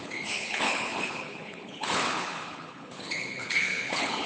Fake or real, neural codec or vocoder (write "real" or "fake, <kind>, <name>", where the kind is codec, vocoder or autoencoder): fake, codec, HILCodec